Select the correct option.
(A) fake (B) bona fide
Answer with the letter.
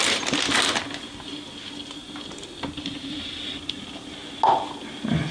B